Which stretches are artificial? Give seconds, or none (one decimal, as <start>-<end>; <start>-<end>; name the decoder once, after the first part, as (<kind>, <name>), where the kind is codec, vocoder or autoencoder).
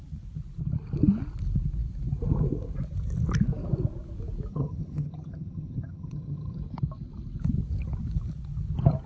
4.5-6.6 (vocoder, HiFi-GAN)